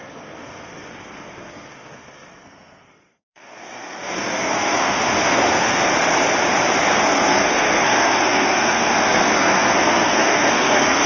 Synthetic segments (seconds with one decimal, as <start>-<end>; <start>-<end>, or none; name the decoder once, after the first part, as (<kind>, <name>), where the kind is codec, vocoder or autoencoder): 0.0-5.9 (codec, SNAC); 6.8-11.1